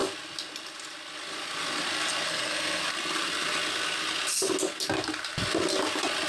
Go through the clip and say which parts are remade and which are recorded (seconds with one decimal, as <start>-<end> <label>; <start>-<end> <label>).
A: 0.0-2.3 recorded; 2.3-2.8 remade; 2.8-6.3 recorded